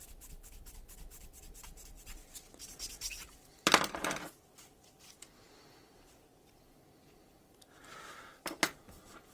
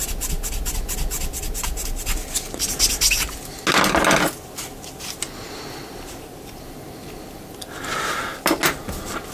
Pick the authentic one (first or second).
second